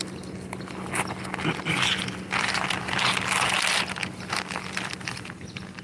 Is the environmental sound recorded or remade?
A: recorded